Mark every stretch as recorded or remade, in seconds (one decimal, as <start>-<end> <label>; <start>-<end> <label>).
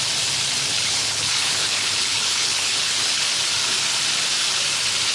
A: 0.0-0.7 recorded; 0.7-3.2 remade; 3.2-5.1 recorded